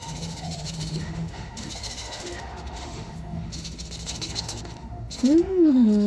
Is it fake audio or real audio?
fake